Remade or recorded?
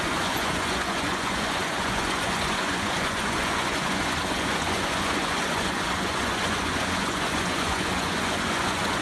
remade